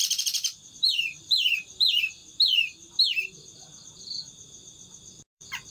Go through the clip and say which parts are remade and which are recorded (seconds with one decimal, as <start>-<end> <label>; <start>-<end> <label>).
0.0-2.2 remade; 2.2-5.2 recorded; 5.2-5.7 remade